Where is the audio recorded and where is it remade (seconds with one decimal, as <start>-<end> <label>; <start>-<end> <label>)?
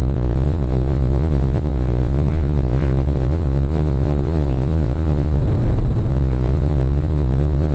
0.0-5.4 remade; 5.4-6.1 recorded; 6.1-7.7 remade